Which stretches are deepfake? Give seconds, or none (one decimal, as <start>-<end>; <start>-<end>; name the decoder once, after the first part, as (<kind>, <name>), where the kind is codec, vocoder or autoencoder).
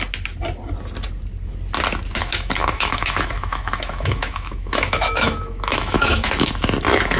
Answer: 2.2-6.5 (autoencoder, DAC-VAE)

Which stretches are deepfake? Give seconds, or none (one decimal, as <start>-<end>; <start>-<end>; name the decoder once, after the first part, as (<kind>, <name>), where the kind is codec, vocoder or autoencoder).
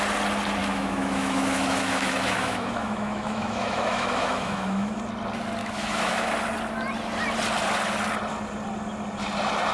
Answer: 0.6-5.0 (autoencoder, DAC-VAE); 5.6-6.3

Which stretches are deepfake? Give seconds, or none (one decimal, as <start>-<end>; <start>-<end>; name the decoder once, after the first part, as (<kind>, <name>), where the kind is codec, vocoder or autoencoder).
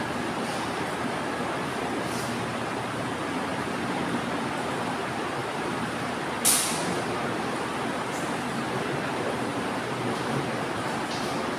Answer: none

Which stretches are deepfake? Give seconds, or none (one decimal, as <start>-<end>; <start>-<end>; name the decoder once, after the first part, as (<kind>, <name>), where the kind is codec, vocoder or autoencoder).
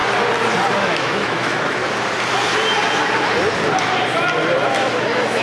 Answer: 0.7-1.8 (autoencoder, DAC-VAE); 5.0-5.4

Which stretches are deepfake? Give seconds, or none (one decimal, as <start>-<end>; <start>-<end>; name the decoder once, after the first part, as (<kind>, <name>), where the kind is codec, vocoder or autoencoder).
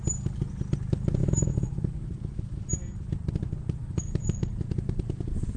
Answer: 1.2-2.7 (autoencoder, DAC-VAE); 3.8-4.4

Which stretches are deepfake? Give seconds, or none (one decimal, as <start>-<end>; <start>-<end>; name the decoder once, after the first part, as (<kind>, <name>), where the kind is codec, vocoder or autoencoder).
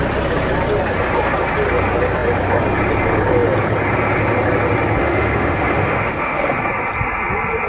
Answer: 5.0-6.5 (autoencoder, DAC-VAE)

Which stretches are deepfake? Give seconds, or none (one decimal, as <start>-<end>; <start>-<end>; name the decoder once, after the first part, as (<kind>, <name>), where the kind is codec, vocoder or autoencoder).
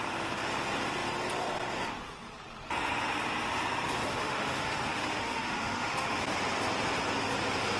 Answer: 4.2-6.2 (autoencoder, DAC-VAE)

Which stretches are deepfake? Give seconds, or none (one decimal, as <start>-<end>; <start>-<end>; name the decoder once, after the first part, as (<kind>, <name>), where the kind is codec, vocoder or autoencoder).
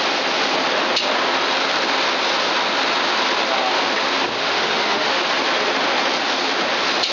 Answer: 4.4-5.2 (autoencoder, DAC-VAE)